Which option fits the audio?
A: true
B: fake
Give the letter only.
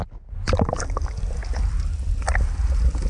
A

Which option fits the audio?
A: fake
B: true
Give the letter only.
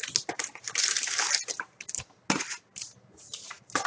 B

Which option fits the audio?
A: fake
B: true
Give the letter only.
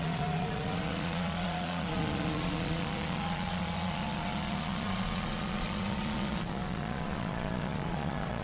A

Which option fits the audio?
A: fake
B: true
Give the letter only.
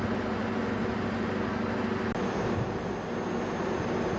B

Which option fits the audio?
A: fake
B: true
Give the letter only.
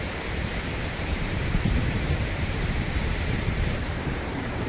A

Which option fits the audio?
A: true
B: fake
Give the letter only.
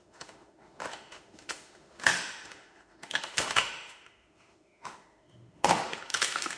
B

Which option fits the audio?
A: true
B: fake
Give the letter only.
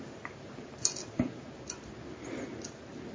A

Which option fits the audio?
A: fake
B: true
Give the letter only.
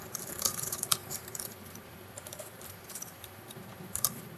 A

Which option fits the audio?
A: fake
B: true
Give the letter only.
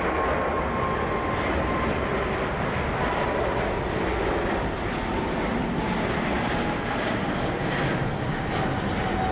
B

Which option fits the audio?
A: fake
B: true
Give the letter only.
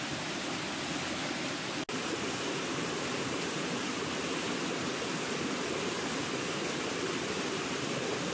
B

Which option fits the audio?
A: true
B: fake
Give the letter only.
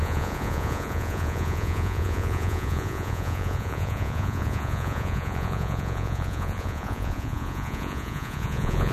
B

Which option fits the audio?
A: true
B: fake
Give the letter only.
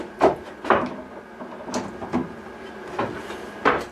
A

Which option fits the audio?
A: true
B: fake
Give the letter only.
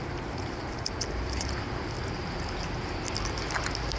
A